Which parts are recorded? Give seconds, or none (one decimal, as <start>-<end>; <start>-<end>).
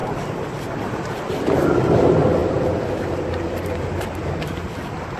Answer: 0.0-5.2